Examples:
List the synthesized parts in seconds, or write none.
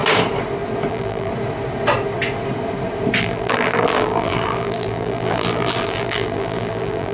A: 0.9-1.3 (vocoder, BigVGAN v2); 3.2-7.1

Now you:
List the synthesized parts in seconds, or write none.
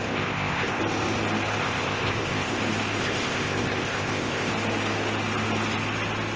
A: 0.0-0.8 (codec, ZipCodec); 1.6-2.6; 3.0-4.5